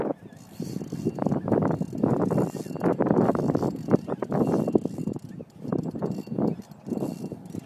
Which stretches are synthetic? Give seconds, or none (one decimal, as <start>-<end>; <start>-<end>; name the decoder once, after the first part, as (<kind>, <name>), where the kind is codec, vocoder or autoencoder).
none